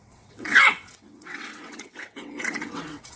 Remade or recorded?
remade